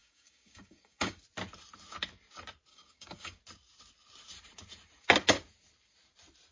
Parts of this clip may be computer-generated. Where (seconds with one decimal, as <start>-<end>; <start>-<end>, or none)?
0.0-1.2; 2.7-3.4